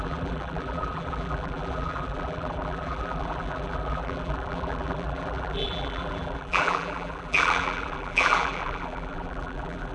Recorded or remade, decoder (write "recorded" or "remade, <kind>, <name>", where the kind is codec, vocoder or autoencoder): remade, vocoder, BigVGAN v2